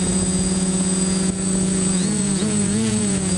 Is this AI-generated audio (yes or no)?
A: yes